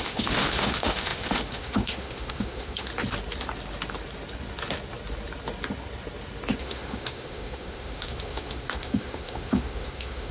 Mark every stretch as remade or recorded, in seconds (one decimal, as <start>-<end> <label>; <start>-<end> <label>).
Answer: 0.0-2.9 remade; 2.9-6.6 recorded; 6.6-10.3 remade